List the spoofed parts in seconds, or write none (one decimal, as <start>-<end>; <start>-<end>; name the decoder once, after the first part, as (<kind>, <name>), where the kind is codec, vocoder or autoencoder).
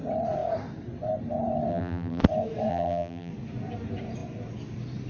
1.7-2.2 (vocoder, BigVGAN v2); 2.7-3.3